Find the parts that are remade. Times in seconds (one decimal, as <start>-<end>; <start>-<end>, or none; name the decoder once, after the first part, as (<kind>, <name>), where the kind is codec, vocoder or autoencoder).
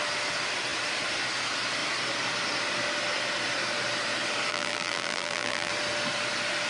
4.5-5.7 (vocoder, BigVGAN v2)